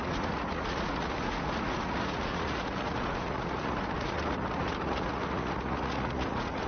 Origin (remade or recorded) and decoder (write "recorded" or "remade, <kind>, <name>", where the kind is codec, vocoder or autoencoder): remade, vocoder, Vocos